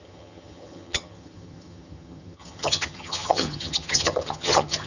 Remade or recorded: remade